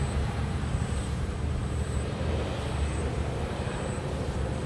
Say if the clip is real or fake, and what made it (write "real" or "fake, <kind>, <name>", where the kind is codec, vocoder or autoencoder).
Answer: fake, vocoder, BigVGAN v2